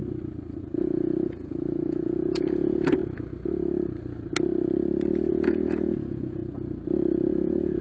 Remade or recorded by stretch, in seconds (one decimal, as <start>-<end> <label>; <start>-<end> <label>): 0.0-0.6 recorded; 0.6-3.0 remade; 3.0-5.3 recorded; 5.3-6.4 remade; 6.4-7.3 recorded; 7.3-7.8 remade